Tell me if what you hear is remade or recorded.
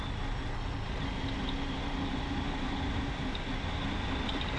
recorded